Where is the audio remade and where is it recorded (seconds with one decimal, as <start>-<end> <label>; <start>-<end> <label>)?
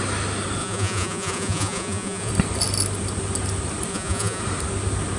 0.0-0.6 recorded; 0.6-2.3 remade; 2.3-3.9 recorded; 3.9-4.4 remade; 4.4-5.2 recorded